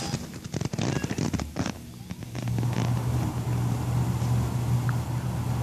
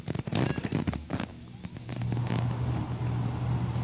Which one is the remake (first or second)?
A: first